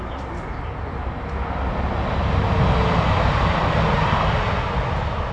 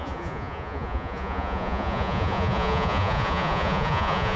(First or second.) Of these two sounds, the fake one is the second